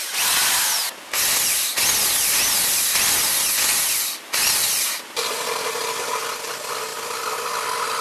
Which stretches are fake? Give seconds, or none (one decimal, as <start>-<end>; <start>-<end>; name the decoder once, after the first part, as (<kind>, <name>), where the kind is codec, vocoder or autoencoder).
none